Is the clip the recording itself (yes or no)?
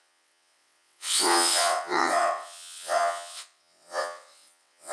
no